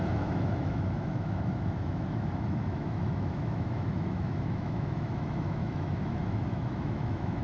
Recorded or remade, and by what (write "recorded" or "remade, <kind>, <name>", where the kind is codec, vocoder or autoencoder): remade, autoencoder, DAC-VAE